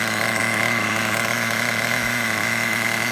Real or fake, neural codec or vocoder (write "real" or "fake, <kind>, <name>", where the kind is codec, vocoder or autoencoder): fake, autoencoder, DAC-VAE